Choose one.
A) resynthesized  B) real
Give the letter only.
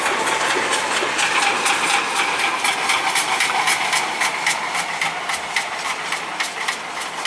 B